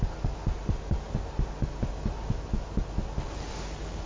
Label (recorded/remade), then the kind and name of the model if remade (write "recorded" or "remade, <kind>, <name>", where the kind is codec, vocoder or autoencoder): recorded